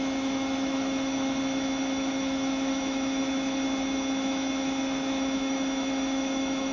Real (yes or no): no